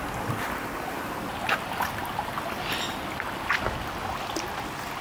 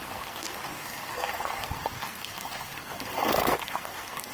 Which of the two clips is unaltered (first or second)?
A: first